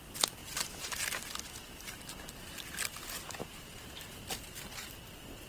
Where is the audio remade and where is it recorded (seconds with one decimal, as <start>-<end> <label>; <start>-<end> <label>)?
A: 0.0-0.4 recorded; 0.4-1.0 remade; 1.0-3.4 recorded; 3.4-4.5 remade; 4.5-5.5 recorded